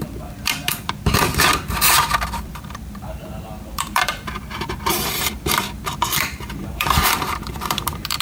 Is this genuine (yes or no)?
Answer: no